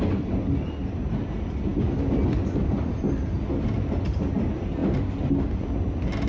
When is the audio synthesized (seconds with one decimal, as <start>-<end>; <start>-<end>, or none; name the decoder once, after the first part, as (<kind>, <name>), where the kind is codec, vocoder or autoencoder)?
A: none